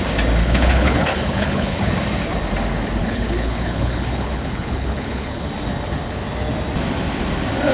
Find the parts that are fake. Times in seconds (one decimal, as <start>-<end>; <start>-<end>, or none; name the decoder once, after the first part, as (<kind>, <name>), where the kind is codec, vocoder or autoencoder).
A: 0.4-1.9 (codec, HILCodec); 3.0-5.5